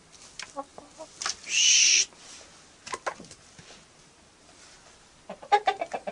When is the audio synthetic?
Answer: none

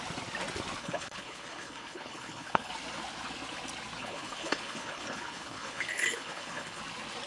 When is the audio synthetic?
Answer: 0.8-2.7 (codec, HILCodec); 4.0-6.8

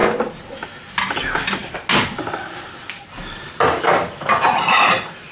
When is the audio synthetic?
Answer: none

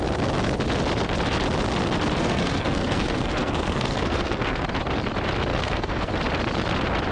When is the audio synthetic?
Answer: 2.2-4.6 (codec, SNAC); 5.5-6.1

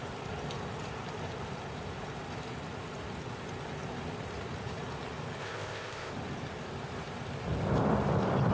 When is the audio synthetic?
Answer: 5.4-6.1 (codec, ZipCodec)

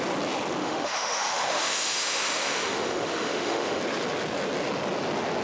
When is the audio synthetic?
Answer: 0.6-3.8 (autoencoder, DAC-VAE)